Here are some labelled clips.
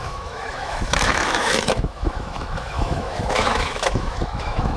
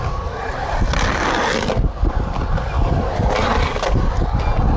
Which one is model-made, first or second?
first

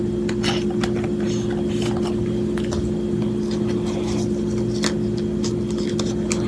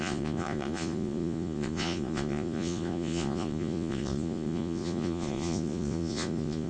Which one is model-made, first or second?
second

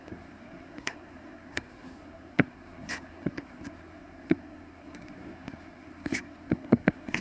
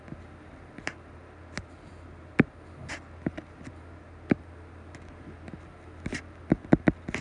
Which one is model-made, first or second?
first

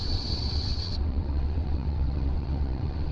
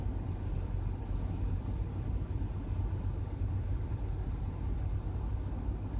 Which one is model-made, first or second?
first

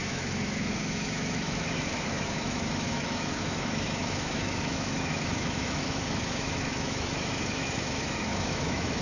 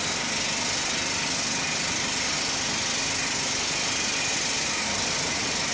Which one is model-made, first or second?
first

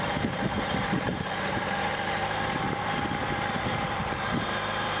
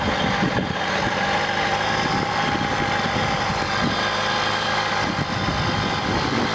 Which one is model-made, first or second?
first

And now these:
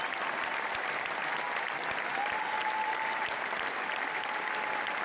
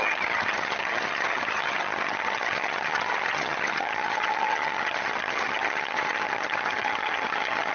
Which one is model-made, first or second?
second